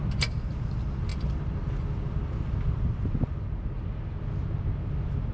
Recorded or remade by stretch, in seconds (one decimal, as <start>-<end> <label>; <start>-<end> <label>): 0.0-5.3 recorded